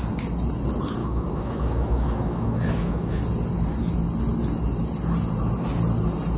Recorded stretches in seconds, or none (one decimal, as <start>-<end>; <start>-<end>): 0.0-1.0; 3.2-6.4